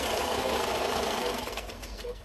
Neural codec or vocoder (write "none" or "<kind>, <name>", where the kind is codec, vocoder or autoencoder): codec, SNAC